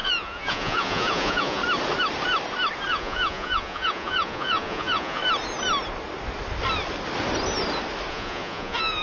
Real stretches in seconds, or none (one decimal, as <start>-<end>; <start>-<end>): 1.6-2.9; 5.2-8.1